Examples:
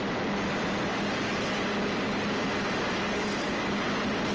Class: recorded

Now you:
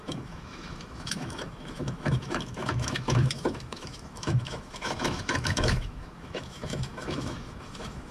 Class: remade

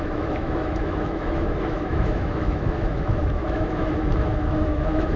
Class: remade